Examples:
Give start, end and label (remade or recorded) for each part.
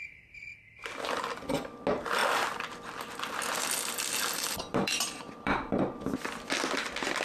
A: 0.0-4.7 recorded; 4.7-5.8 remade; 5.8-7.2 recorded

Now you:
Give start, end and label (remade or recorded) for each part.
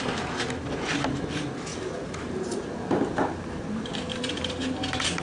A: 0.0-1.7 recorded; 1.7-4.8 remade; 4.8-5.2 recorded